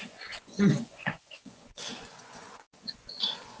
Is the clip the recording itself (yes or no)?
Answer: no